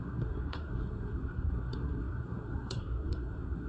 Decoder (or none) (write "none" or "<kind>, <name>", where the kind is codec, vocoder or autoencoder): codec, SNAC